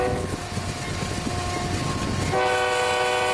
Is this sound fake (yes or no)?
no